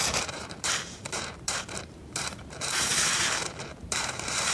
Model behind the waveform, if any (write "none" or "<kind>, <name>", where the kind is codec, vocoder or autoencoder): vocoder, BigVGAN v2